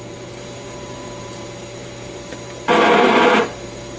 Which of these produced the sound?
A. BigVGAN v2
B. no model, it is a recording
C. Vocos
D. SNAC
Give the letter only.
A